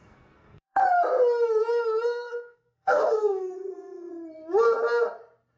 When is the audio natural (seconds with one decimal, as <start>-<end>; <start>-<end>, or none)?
0.8-1.6; 4.1-5.6